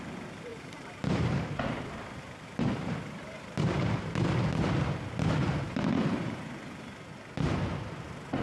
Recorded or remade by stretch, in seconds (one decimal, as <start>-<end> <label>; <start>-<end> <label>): 0.0-0.5 recorded; 0.5-4.5 remade; 4.5-5.5 recorded; 5.5-6.4 remade; 6.4-8.4 recorded